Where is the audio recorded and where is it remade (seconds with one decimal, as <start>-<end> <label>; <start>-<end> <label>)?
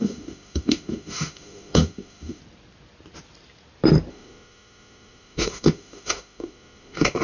0.0-2.4 remade; 2.4-4.1 recorded; 4.1-7.2 remade